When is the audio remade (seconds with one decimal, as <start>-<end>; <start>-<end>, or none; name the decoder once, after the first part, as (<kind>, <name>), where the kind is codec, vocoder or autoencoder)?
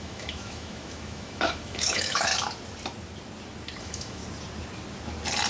0.0-2.3 (autoencoder, DAC-VAE); 3.8-4.2